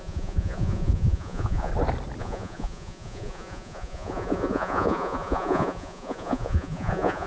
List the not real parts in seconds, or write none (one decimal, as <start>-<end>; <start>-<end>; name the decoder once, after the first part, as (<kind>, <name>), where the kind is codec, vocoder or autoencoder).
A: 0.0-1.7 (vocoder, Vocos); 2.2-7.3